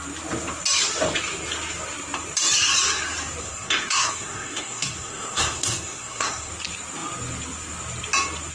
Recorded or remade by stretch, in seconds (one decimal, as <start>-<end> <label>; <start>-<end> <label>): 0.0-3.4 recorded; 3.4-6.5 remade; 6.5-8.5 recorded